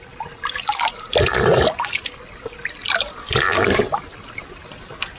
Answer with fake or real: real